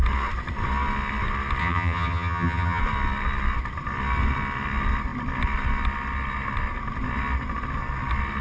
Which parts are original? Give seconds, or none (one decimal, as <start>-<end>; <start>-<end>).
0.0-1.6; 2.8-8.4